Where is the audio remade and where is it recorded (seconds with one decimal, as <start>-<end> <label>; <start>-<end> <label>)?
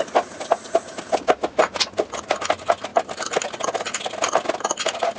0.0-5.2 recorded